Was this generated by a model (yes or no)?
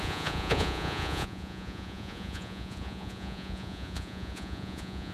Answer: yes